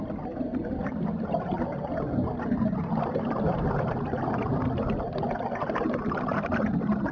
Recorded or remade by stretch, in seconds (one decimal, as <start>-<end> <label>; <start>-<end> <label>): 0.0-7.1 recorded